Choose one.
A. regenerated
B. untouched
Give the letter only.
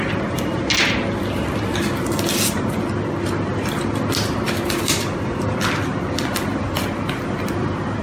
B